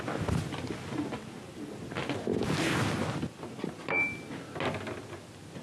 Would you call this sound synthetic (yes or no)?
no